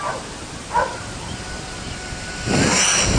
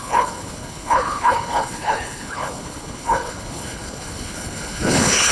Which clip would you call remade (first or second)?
second